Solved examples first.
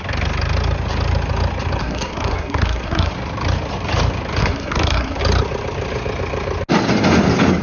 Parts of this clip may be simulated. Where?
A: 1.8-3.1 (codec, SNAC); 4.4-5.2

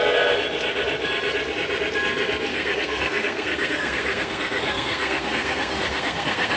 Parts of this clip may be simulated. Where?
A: 2.5-6.6 (codec, SNAC)